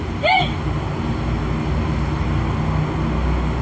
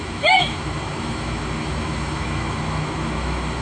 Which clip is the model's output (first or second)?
second